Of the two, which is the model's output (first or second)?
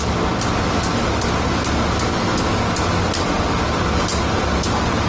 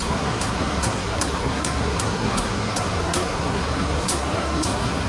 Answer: second